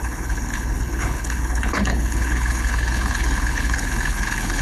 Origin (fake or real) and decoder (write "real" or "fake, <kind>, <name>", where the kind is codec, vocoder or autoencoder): fake, codec, HILCodec